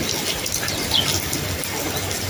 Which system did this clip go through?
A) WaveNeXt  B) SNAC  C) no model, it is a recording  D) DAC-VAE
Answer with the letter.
C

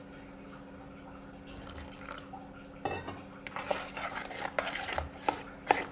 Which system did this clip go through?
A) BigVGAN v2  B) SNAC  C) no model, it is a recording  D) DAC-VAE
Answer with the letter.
C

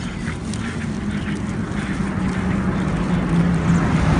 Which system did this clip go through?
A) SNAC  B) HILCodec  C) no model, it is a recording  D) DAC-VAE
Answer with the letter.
C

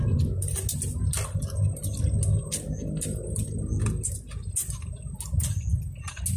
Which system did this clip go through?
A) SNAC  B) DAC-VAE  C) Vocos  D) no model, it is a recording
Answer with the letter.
D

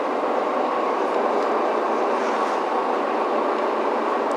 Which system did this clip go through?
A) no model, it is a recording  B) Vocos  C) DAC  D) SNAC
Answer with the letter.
A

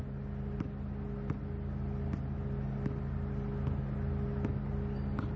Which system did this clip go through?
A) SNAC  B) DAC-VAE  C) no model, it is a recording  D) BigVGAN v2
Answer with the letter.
C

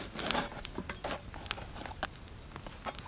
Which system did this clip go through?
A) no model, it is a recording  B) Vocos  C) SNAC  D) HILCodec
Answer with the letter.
A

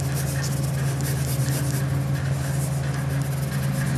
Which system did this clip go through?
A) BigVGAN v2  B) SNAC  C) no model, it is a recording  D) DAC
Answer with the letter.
C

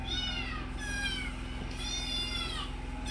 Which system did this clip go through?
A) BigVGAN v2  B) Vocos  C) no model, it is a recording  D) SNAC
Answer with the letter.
C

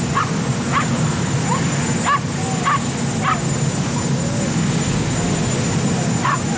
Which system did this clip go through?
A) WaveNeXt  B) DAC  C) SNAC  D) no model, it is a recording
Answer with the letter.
D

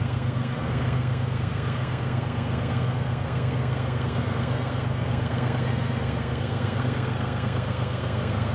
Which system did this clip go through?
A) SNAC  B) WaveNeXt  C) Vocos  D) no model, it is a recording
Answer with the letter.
A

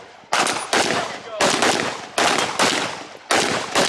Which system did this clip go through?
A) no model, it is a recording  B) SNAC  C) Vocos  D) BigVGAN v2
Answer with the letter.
A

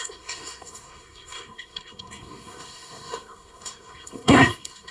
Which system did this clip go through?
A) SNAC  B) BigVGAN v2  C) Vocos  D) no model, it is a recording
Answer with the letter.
A